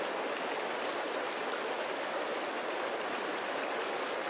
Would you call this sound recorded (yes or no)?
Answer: yes